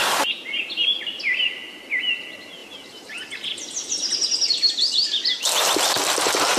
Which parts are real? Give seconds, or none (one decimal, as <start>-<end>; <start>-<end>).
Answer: 0.0-6.6